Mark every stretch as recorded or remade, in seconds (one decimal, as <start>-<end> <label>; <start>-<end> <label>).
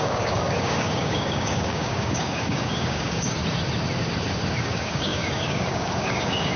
0.0-3.4 remade; 3.4-4.6 recorded; 4.6-6.6 remade